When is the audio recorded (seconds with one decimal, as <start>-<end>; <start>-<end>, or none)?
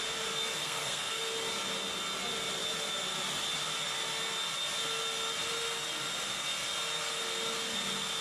0.0-0.6; 1.2-8.2